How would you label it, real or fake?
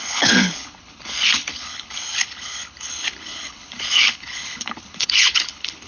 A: fake